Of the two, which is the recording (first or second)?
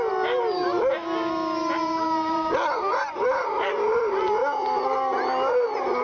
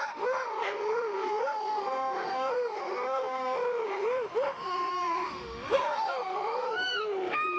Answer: first